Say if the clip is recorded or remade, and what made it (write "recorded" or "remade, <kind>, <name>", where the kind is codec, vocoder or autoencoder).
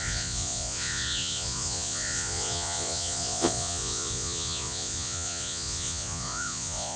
remade, vocoder, Vocos